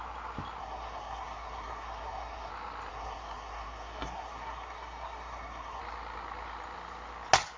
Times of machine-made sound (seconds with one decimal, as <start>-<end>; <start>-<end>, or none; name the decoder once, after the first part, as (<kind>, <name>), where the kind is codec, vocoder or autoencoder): 0.6-2.5 (codec, SNAC); 2.9-5.8